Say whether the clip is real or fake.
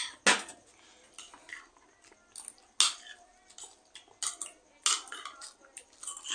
real